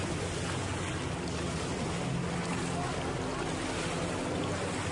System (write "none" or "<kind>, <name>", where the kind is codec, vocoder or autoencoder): none